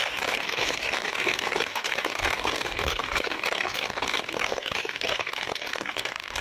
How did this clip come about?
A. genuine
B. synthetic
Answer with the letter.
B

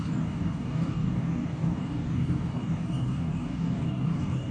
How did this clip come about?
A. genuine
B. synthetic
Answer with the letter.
B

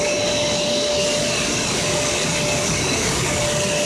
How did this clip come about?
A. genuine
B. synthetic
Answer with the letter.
B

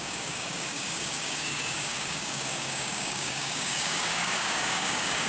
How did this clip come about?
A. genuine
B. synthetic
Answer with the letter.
B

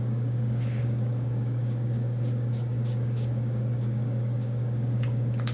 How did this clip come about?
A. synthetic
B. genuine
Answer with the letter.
A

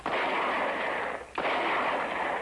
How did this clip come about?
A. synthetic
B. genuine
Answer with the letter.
B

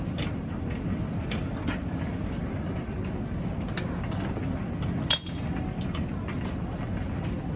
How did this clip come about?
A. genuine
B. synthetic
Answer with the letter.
A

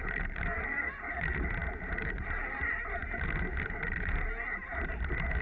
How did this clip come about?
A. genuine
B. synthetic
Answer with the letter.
A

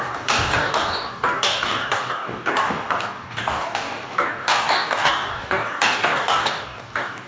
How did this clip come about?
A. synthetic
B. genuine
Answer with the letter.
A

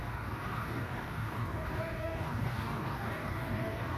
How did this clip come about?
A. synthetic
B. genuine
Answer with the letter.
A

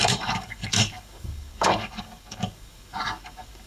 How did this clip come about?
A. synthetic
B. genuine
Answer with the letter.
A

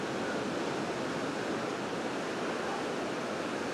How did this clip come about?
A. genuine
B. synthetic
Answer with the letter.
A